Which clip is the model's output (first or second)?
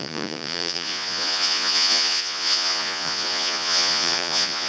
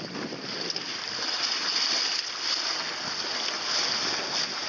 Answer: first